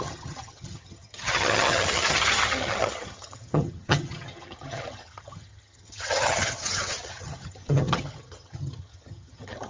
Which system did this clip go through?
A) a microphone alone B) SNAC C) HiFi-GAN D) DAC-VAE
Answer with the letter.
C